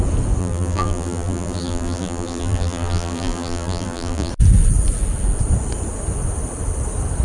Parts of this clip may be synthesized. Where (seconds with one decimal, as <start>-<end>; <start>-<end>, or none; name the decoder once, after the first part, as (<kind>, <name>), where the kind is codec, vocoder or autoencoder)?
0.4-4.3 (vocoder, BigVGAN v2)